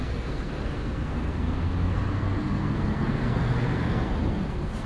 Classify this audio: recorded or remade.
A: remade